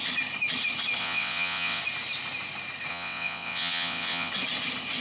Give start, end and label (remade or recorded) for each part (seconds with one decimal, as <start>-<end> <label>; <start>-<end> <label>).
0.0-1.0 recorded; 1.0-1.8 remade; 1.8-2.9 recorded; 2.9-4.3 remade; 4.3-5.0 recorded